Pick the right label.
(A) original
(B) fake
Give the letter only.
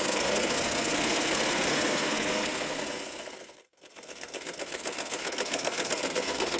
B